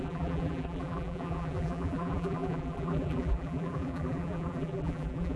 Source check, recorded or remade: remade